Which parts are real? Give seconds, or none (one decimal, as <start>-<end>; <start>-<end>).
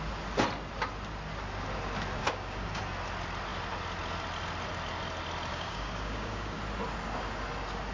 0.0-2.2; 2.8-5.5; 6.6-7.9